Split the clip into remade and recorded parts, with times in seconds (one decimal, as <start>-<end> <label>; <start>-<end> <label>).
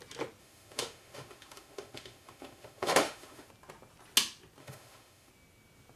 0.0-0.4 recorded; 0.4-3.5 remade; 3.5-4.6 recorded; 4.6-5.3 remade; 5.3-6.0 recorded